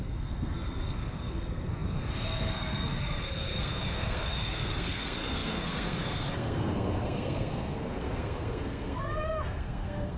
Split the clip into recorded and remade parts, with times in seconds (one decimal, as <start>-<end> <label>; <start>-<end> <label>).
0.0-10.2 remade